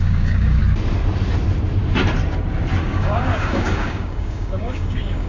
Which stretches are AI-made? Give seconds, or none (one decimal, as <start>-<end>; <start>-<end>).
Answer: 0.0-0.6; 2.8-5.3

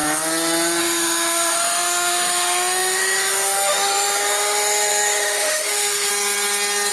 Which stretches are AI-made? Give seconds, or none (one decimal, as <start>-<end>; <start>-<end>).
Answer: 0.8-6.1

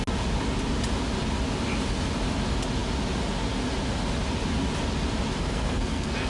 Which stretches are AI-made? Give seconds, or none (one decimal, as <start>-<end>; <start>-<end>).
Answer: 5.4-6.3

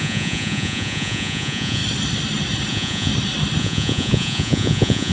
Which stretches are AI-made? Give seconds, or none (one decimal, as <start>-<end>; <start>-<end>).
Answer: 0.0-1.8; 2.7-3.1; 3.6-5.1

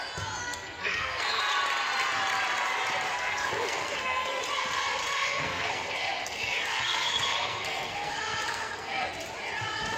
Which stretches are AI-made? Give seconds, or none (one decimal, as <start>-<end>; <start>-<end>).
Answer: 0.4-1.4; 3.1-4.4; 5.0-9.1

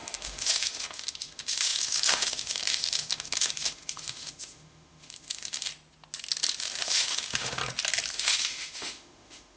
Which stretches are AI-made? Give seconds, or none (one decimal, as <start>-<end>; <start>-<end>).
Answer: 0.0-5.7; 6.6-7.6; 8.1-9.6